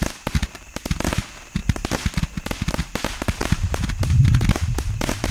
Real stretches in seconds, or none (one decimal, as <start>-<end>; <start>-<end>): 0.0-3.4; 4.2-5.3